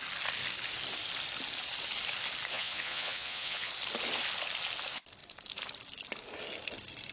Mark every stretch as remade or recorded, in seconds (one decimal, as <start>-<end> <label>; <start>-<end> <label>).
0.0-2.5 recorded; 2.5-3.7 remade; 3.7-7.1 recorded